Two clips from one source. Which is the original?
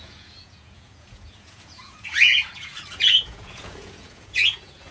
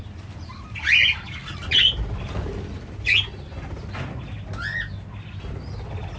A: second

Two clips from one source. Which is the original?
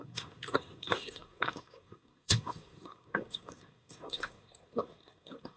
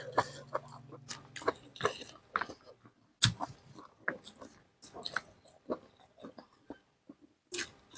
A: second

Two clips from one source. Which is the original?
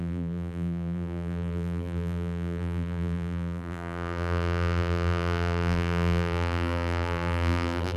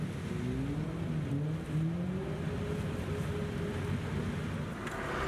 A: second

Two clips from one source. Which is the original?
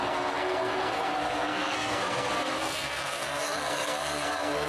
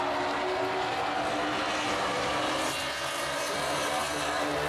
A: second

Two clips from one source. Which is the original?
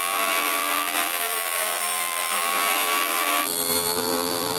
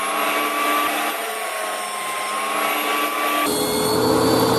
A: second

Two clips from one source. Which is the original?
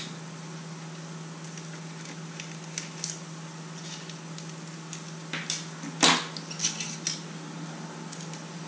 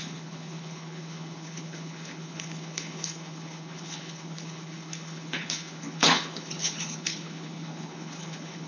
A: first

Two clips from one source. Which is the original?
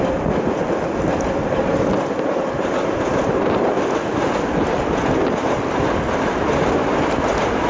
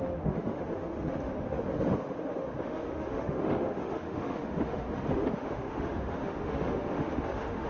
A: first